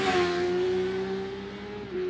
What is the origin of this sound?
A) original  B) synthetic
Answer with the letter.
A